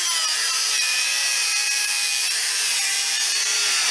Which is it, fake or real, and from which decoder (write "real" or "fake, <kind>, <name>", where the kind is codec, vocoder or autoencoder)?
fake, vocoder, BigVGAN v2